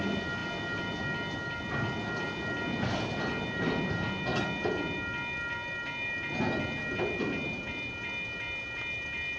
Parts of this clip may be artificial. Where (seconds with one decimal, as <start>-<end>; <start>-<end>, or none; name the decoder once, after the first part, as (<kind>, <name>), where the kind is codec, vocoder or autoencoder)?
none